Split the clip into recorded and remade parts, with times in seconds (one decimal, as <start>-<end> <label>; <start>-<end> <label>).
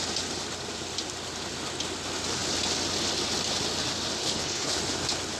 0.0-4.2 recorded; 4.2-4.8 remade; 4.8-5.4 recorded